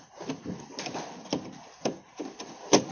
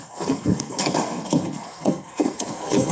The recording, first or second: first